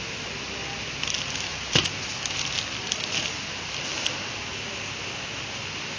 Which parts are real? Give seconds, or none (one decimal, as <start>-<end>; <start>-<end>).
0.0-6.0

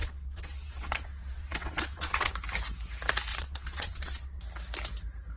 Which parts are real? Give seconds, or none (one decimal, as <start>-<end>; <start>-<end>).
2.3-3.3; 4.4-5.4